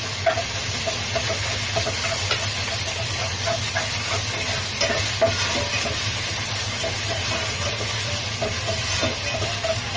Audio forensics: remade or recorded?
recorded